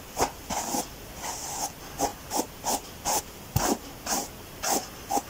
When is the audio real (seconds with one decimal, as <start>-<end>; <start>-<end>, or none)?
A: 0.0-5.3